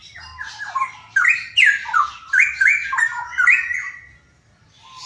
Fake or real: real